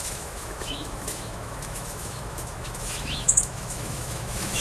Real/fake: fake